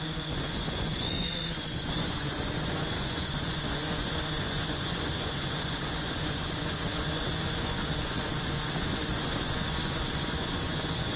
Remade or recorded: remade